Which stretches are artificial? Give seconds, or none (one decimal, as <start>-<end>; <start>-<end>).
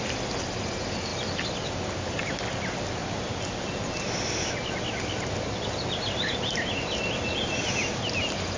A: none